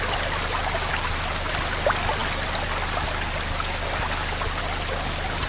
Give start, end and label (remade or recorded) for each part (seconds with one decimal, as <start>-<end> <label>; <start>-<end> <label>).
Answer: 0.0-0.9 recorded; 0.9-1.5 remade; 1.5-5.5 recorded